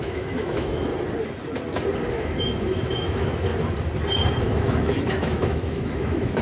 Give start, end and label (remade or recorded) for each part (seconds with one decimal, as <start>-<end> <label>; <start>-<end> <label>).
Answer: 0.0-0.9 remade; 0.9-2.1 recorded; 2.1-3.5 remade; 3.5-4.4 recorded; 4.4-6.4 remade